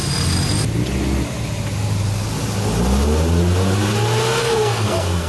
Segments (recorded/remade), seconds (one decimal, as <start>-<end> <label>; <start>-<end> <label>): 0.0-4.4 recorded; 4.4-5.3 remade